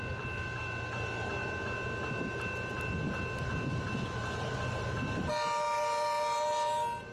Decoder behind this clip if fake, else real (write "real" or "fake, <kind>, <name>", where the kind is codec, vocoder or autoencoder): real